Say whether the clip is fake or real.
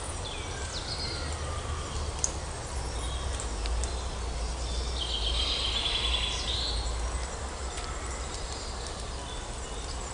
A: real